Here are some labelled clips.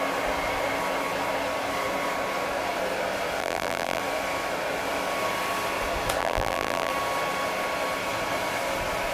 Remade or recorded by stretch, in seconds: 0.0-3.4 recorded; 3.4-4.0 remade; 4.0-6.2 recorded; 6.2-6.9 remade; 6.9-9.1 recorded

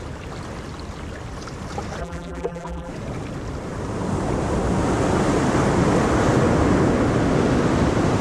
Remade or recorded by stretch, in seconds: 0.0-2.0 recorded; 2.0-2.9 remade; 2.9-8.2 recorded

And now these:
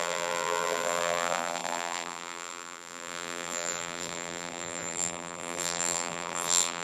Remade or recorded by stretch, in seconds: 0.0-6.8 remade

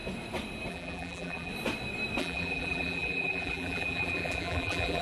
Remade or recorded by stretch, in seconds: 0.0-0.7 recorded; 0.7-1.5 remade; 1.5-2.2 recorded; 2.2-5.0 remade